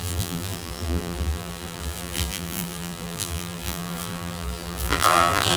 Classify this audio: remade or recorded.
remade